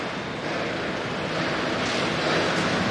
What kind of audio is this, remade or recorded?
recorded